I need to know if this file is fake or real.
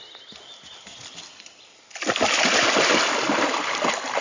real